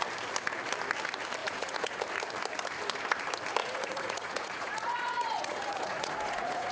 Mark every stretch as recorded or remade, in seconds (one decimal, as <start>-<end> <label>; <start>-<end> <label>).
0.0-1.4 recorded; 1.4-2.0 remade; 2.0-3.6 recorded; 3.6-6.7 remade